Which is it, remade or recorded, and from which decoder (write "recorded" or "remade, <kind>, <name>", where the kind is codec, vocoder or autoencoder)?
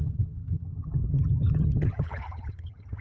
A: remade, vocoder, HiFi-GAN